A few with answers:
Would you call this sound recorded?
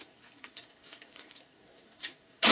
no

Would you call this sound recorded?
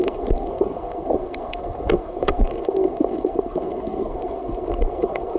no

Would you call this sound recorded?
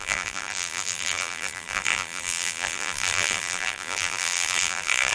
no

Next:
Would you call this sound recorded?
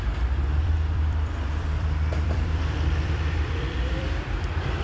no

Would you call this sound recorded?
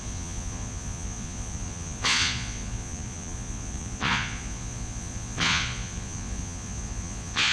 no